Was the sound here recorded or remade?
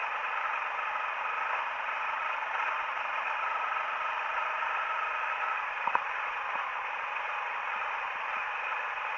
recorded